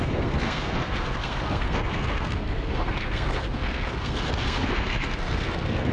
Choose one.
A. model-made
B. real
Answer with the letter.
A